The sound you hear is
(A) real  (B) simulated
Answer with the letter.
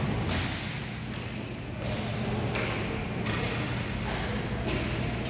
A